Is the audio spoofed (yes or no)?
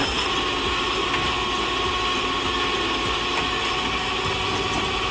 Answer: no